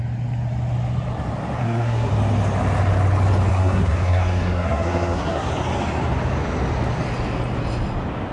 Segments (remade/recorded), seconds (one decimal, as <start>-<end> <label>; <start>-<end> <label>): 0.0-1.6 recorded; 1.6-2.1 remade; 2.1-3.5 recorded; 3.5-5.5 remade; 5.5-8.3 recorded